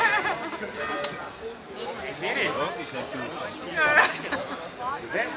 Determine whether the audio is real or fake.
real